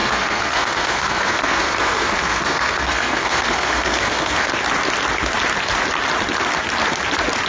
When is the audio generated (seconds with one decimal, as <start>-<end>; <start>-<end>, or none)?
0.0-4.5